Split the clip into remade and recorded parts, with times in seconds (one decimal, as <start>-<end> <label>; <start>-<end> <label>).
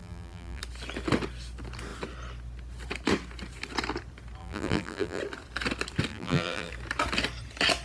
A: 0.0-0.6 remade; 0.6-4.4 recorded; 4.4-5.2 remade; 5.2-6.1 recorded; 6.1-6.7 remade; 6.7-7.8 recorded